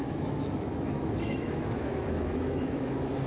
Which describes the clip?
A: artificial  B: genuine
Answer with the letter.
A